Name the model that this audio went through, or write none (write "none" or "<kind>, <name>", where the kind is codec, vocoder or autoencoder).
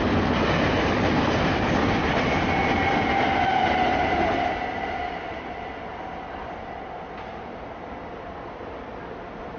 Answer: none